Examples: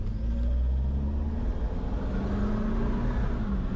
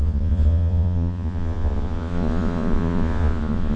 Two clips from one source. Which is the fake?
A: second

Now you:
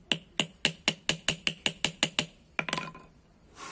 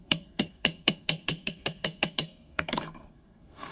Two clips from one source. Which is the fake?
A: second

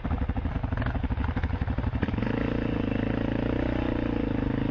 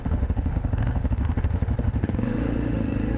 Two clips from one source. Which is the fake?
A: second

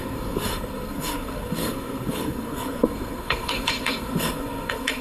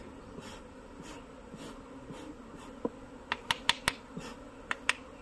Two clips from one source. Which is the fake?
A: first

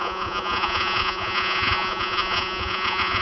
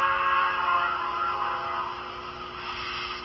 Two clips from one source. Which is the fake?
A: first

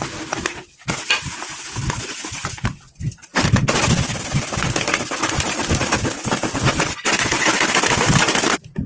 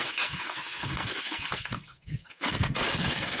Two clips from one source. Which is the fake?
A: second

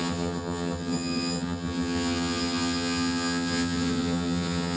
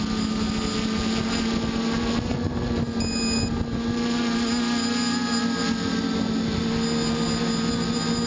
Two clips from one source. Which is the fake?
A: first